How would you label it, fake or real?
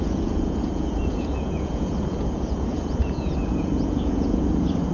fake